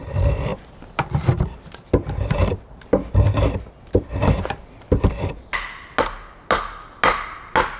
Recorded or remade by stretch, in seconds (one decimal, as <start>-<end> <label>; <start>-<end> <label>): 0.0-7.8 recorded